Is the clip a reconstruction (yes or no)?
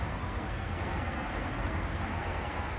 yes